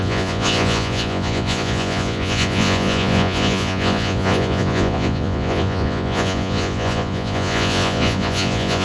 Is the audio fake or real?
fake